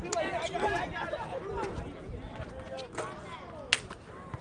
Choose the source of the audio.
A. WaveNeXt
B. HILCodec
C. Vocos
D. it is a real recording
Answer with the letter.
D